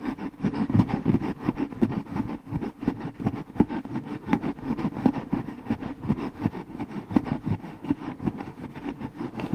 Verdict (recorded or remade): remade